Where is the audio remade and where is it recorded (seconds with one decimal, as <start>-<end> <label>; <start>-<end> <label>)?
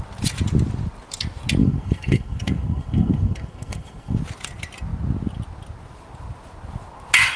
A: 0.0-1.6 recorded; 1.6-4.2 remade; 4.2-7.4 recorded